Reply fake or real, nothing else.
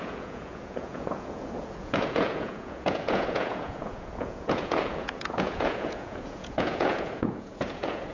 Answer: fake